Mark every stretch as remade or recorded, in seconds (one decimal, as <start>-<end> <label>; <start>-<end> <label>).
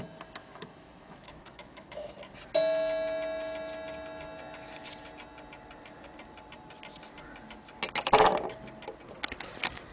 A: 0.0-0.4 recorded; 0.4-2.1 remade; 2.1-9.9 recorded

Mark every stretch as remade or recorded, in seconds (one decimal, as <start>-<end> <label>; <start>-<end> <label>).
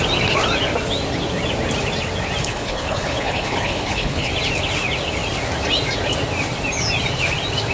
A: 0.0-2.4 recorded; 2.4-4.3 remade; 4.3-7.7 recorded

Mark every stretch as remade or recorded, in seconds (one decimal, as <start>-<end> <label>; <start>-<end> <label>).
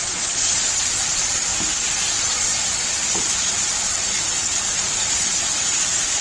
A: 0.0-1.5 remade; 1.5-2.1 recorded; 2.1-2.5 remade; 2.5-3.1 recorded; 3.1-6.2 remade